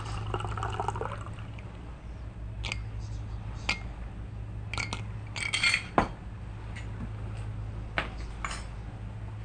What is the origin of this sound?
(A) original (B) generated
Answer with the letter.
A